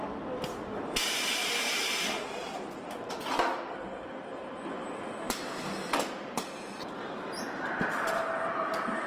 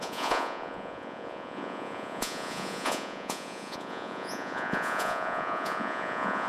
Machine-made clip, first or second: second